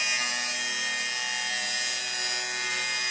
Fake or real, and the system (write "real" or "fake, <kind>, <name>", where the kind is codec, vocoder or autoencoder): real